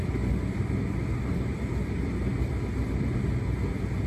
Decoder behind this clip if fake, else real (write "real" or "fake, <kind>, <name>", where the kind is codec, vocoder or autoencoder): real